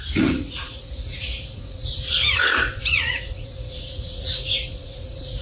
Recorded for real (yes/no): no